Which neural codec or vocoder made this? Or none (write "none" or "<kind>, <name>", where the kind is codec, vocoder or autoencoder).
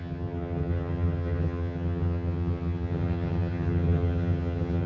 vocoder, HiFi-GAN